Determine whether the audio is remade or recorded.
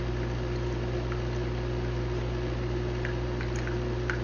recorded